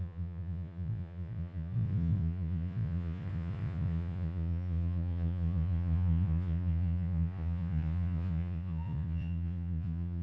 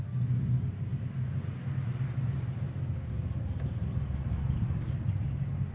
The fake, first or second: first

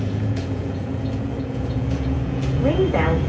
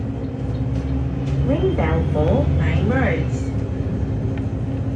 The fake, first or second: first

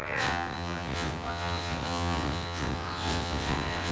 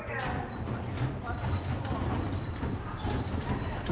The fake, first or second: first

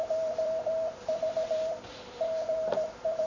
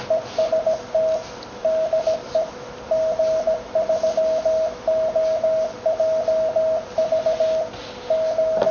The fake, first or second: first